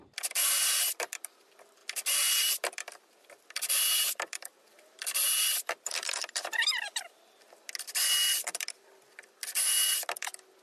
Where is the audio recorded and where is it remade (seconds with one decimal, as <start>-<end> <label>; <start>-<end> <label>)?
0.0-10.6 recorded

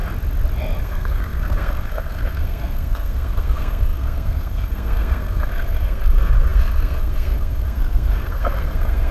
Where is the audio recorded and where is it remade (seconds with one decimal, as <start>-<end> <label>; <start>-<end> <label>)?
0.0-0.8 recorded; 0.8-9.1 remade